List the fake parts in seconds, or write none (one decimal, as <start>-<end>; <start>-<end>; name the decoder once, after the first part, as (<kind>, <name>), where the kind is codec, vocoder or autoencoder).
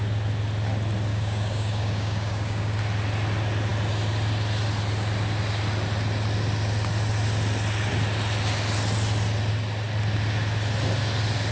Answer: 1.1-2.8 (codec, DAC)